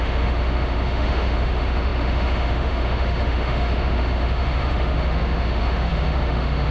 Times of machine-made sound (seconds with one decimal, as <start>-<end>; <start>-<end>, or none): 0.0-6.7